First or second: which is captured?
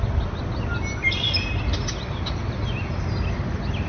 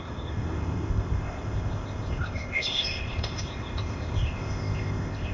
first